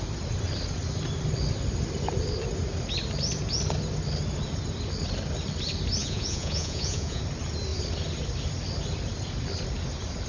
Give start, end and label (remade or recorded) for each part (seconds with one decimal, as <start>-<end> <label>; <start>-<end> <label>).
0.0-6.0 recorded; 6.0-7.2 remade; 7.2-10.3 recorded